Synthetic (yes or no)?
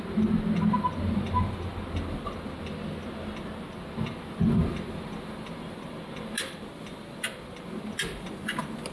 no